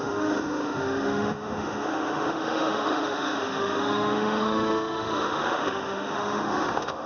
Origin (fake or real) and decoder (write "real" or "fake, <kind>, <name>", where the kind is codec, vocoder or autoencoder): fake, autoencoder, DAC-VAE